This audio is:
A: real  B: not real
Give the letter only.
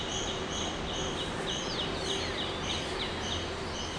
A